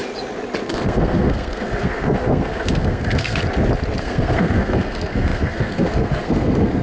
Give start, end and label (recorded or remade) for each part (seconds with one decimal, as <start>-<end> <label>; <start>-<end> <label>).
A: 0.0-0.7 recorded; 0.7-3.4 remade; 3.4-4.0 recorded; 4.0-6.8 remade